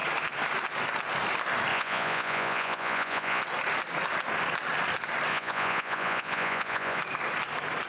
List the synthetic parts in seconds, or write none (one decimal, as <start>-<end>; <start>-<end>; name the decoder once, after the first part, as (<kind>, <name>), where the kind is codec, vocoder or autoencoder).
1.7-3.4 (vocoder, Vocos); 5.3-7.0